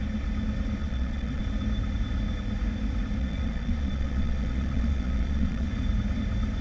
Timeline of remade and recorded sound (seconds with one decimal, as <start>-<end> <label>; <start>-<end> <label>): 0.0-0.8 recorded; 0.8-1.4 remade; 1.4-3.2 recorded; 3.2-5.7 remade; 5.7-6.6 recorded